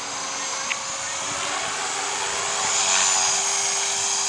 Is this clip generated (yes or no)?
no